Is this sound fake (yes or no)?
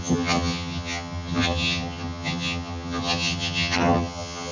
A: yes